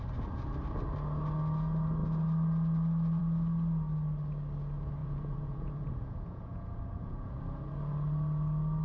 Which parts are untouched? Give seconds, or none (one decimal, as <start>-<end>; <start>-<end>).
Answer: 0.0-5.0; 7.3-8.8